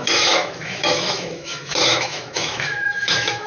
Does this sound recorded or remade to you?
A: remade